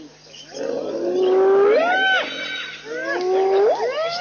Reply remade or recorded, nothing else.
recorded